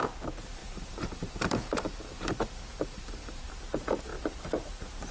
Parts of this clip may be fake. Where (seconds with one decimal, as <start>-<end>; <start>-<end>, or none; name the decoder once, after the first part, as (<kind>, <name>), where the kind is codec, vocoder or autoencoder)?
0.6-3.5 (vocoder, BigVGAN v2)